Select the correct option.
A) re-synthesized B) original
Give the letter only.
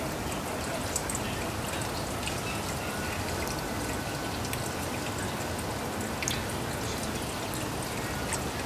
B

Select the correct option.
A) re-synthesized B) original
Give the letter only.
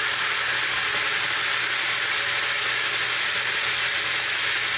B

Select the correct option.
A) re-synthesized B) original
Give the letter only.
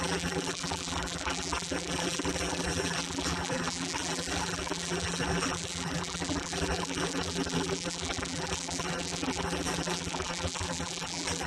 A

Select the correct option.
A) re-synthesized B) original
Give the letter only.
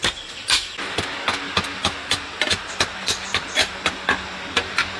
B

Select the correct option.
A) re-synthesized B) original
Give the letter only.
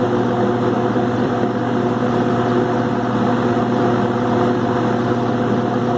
A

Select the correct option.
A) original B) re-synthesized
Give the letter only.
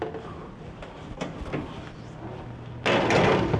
A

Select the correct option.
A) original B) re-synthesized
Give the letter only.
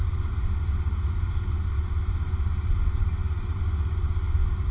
B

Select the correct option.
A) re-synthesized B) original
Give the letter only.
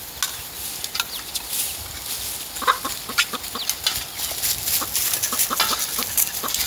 B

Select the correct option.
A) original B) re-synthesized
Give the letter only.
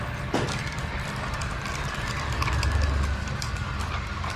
A